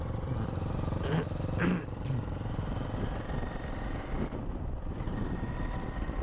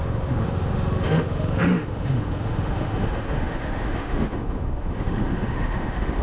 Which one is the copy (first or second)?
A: second